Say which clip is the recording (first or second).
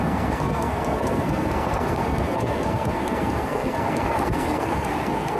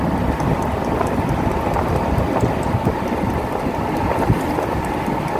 second